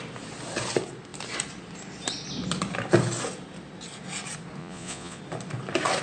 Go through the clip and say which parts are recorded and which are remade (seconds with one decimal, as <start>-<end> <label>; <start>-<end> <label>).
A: 0.0-4.6 recorded; 4.6-5.2 remade; 5.2-6.0 recorded